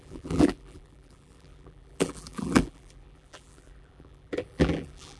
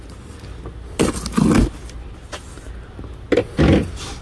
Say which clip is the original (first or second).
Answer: second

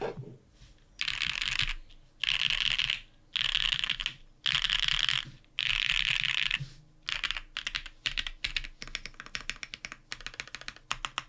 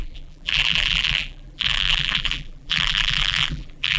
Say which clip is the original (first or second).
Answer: first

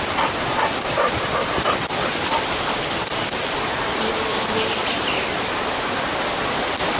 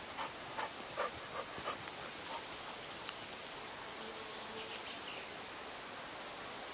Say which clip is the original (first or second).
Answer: second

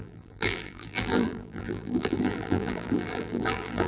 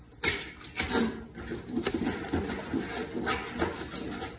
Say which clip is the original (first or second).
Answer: second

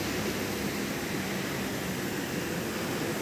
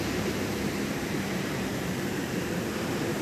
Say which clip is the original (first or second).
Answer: first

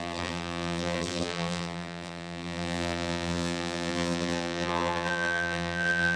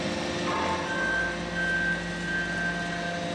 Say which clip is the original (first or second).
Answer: second